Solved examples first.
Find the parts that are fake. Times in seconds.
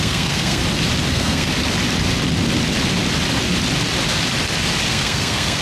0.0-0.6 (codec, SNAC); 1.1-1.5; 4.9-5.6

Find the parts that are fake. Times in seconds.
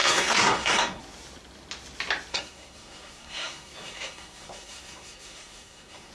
0.0-1.0 (codec, SNAC); 2.3-6.1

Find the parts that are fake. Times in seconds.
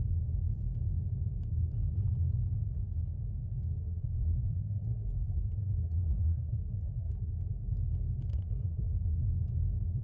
3.8-7.3 (codec, SNAC); 8.3-9.3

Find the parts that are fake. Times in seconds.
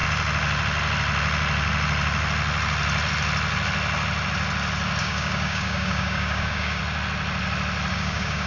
5.0-6.8 (codec, DAC); 7.9-8.5